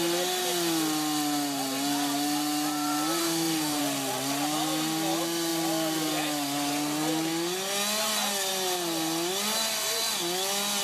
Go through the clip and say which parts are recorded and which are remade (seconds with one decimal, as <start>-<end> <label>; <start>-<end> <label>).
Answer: 0.0-3.2 recorded; 3.2-3.8 remade; 3.8-10.8 recorded